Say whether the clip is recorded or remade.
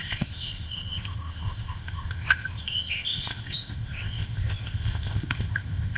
remade